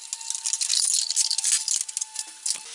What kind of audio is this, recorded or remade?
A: recorded